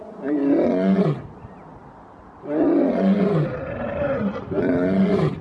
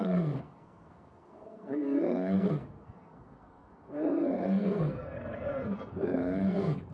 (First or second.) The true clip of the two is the first